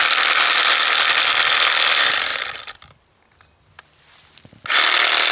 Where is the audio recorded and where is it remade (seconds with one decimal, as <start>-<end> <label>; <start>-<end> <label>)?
0.0-2.3 remade; 2.3-5.3 recorded